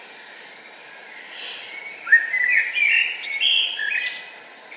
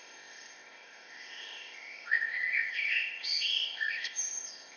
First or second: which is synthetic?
second